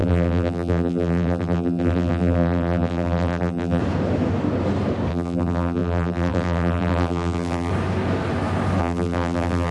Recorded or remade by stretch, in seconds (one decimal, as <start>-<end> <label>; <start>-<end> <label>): 0.0-3.8 remade; 3.8-5.1 recorded; 5.1-7.7 remade; 7.7-8.8 recorded; 8.8-9.7 remade